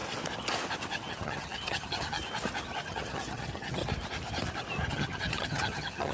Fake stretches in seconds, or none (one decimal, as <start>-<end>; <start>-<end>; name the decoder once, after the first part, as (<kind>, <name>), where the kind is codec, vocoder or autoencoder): 1.1-2.2 (vocoder, HiFi-GAN); 2.9-3.8; 4.9-6.1